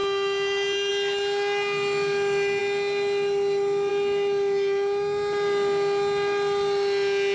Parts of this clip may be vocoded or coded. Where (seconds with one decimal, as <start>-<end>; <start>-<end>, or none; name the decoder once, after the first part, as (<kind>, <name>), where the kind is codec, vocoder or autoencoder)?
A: none